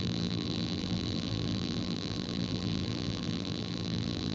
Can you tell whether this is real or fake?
fake